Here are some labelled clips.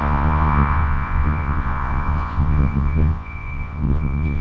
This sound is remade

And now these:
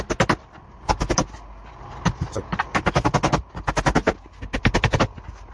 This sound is recorded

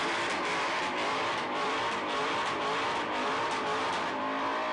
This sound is remade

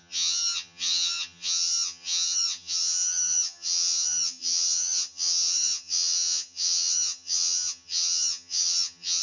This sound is remade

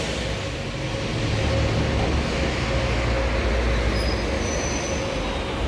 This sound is recorded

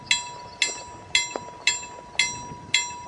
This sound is recorded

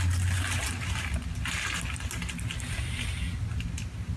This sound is recorded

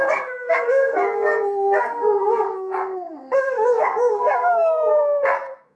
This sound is remade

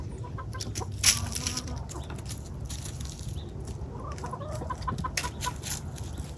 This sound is recorded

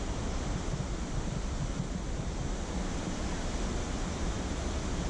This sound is recorded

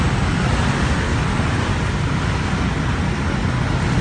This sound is recorded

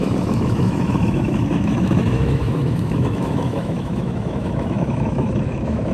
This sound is remade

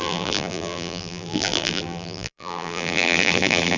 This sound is remade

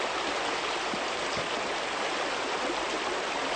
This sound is recorded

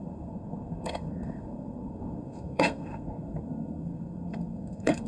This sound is remade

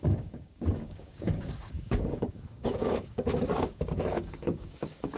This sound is remade